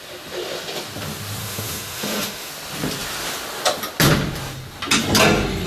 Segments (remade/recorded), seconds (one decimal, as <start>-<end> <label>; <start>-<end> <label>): 0.0-1.4 recorded; 1.4-2.5 remade; 2.5-5.7 recorded